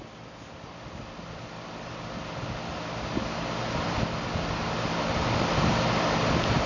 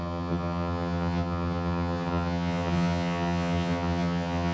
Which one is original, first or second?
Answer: first